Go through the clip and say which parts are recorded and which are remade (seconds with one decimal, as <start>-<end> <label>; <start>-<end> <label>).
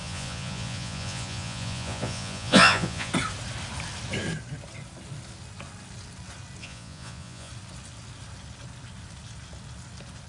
0.0-3.1 remade; 3.1-6.6 recorded; 6.6-7.5 remade; 7.5-10.3 recorded